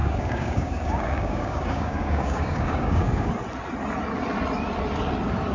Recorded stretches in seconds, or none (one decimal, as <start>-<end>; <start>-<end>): 3.3-5.5